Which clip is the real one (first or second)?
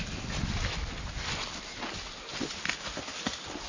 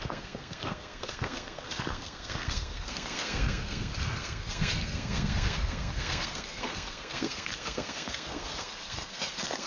first